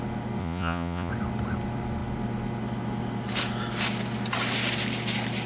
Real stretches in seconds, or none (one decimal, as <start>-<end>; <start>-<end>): 0.0-0.4; 1.1-5.5